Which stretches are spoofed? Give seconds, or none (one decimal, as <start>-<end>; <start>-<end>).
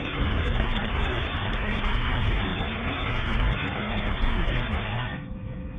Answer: 0.0-5.8